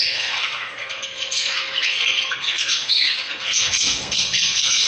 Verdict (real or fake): fake